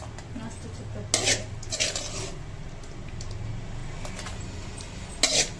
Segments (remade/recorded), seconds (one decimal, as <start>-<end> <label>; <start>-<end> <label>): 0.0-5.6 recorded